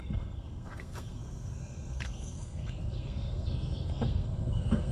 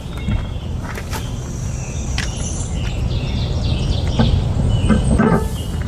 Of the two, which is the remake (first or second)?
first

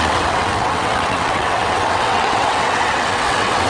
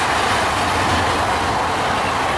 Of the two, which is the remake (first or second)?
first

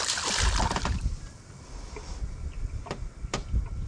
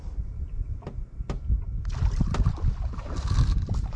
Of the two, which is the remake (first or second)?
first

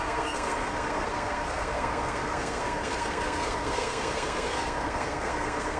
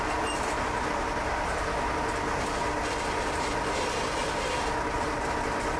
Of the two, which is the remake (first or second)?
first